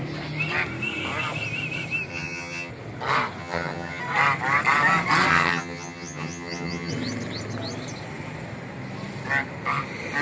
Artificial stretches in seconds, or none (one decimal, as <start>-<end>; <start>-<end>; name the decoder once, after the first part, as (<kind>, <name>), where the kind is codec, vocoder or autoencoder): 2.1-2.7 (vocoder, HiFi-GAN); 3.4-4.0; 5.3-6.9